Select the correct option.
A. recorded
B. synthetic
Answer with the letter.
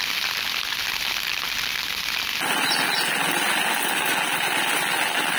A